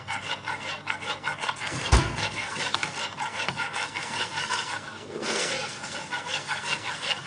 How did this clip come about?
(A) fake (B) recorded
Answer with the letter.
A